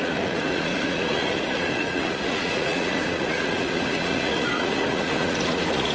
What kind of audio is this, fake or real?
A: fake